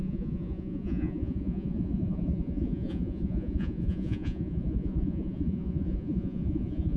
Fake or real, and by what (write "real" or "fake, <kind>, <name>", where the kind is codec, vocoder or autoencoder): fake, vocoder, Vocos